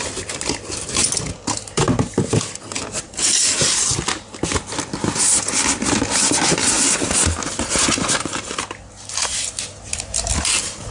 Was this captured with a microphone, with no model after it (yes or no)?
yes